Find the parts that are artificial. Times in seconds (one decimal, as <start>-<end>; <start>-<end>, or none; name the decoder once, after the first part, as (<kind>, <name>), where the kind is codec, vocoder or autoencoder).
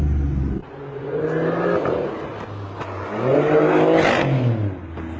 0.6-1.2 (vocoder, Vocos)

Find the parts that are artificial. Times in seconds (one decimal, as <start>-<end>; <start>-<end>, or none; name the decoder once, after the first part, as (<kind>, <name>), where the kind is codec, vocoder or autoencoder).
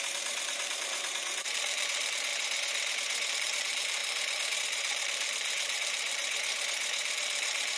0.0-2.3 (vocoder, BigVGAN v2); 3.3-4.0; 4.6-6.2; 7.0-7.8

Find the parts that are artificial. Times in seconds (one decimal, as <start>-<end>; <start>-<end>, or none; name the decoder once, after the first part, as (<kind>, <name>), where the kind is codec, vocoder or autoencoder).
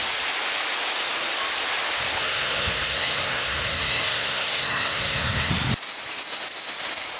2.2-5.5 (codec, SNAC)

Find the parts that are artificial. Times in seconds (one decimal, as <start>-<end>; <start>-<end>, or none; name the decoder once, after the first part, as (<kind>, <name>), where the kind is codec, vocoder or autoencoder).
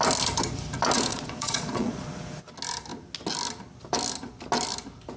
1.1-2.5 (vocoder, Vocos)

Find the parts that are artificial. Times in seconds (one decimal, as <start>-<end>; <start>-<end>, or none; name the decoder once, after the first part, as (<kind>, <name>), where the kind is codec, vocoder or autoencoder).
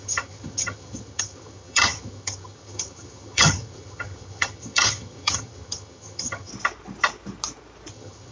0.0-6.5 (vocoder, HiFi-GAN); 7.9-8.3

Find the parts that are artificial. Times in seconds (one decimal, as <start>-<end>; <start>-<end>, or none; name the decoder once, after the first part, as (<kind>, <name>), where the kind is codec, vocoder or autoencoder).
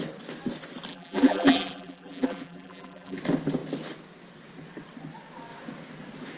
0.9-3.2 (vocoder, BigVGAN v2)